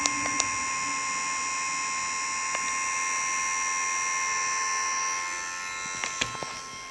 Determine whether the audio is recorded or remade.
recorded